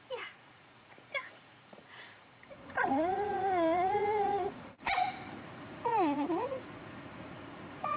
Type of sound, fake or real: fake